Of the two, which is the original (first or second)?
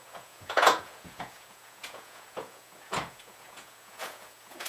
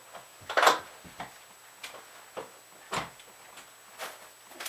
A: second